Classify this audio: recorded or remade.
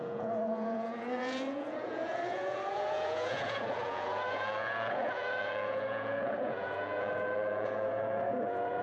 remade